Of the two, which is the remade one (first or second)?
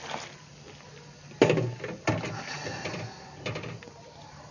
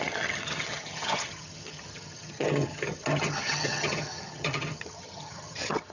second